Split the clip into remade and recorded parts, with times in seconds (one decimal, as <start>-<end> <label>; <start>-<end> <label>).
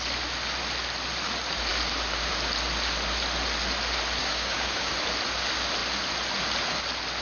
0.0-4.2 recorded; 4.2-4.9 remade; 4.9-7.2 recorded